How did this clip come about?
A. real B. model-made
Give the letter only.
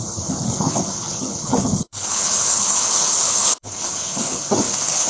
B